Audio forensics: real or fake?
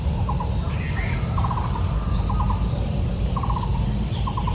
real